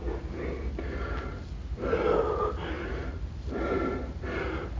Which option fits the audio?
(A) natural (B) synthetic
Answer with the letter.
A